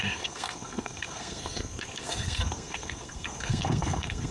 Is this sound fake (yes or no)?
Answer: yes